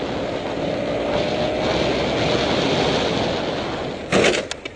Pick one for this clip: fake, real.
real